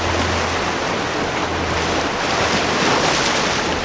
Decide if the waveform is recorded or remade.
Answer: recorded